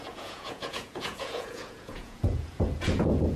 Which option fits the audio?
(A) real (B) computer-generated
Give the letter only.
B